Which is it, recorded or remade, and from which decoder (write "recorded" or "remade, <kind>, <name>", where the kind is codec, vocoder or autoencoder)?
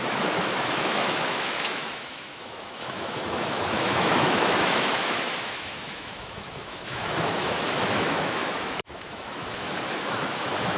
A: remade, autoencoder, DAC-VAE